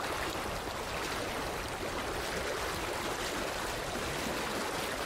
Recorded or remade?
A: recorded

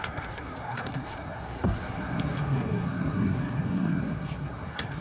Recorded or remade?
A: remade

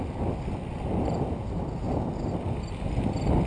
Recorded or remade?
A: recorded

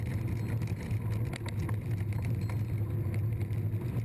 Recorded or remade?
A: recorded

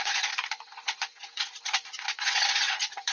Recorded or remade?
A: remade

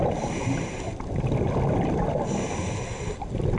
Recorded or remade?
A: recorded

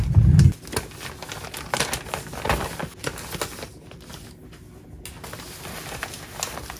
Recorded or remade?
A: recorded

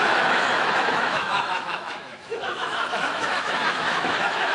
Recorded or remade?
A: remade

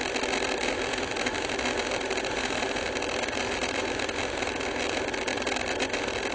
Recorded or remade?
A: recorded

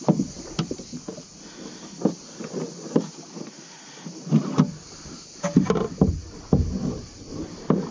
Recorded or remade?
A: recorded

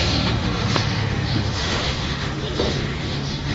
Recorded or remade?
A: remade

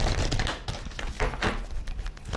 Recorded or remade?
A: recorded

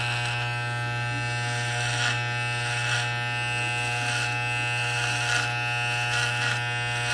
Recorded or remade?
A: recorded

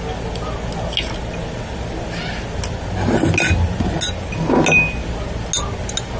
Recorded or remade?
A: recorded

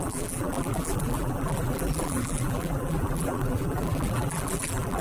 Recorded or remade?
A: remade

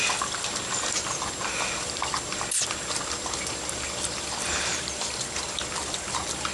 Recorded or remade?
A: recorded